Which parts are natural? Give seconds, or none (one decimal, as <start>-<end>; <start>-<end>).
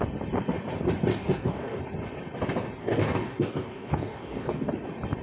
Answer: 0.0-1.1; 1.8-2.8; 4.7-5.2